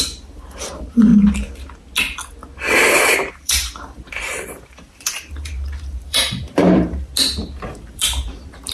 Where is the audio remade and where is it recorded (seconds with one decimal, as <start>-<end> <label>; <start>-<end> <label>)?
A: 0.0-1.1 remade; 1.1-3.3 recorded; 3.3-7.1 remade; 7.1-7.7 recorded; 7.7-8.7 remade

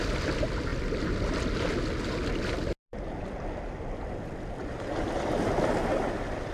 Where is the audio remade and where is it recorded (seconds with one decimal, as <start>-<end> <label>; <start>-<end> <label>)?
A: 0.0-6.5 recorded

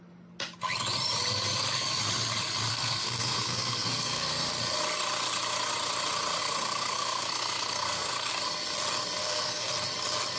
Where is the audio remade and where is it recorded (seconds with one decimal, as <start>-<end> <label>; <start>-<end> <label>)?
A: 0.0-2.7 recorded; 2.7-4.5 remade; 4.5-6.4 recorded; 6.4-8.3 remade; 8.3-9.2 recorded; 9.2-9.7 remade; 9.7-10.4 recorded

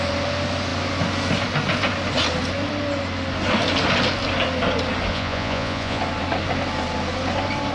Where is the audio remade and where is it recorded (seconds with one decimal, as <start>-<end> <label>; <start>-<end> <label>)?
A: 0.0-5.1 recorded; 5.1-6.0 remade; 6.0-7.7 recorded

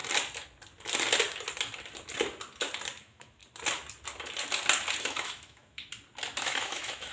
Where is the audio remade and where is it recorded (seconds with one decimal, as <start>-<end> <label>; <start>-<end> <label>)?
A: 0.0-3.0 recorded; 3.0-3.4 remade; 3.4-5.0 recorded; 5.0-5.9 remade; 5.9-6.4 recorded; 6.4-7.1 remade

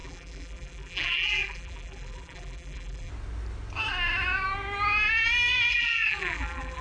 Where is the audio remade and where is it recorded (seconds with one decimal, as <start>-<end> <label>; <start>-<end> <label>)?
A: 0.0-3.1 remade; 3.1-5.7 recorded; 5.7-6.8 remade